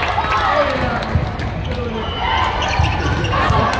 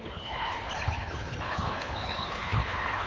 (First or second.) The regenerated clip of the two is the second